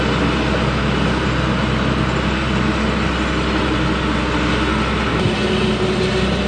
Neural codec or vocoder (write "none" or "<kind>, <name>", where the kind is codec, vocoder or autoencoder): none